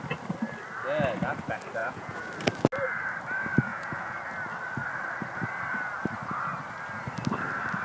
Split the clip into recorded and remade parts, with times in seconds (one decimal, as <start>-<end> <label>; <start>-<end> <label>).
0.0-1.8 recorded; 1.8-2.3 remade; 2.3-3.7 recorded; 3.7-4.2 remade; 4.2-7.8 recorded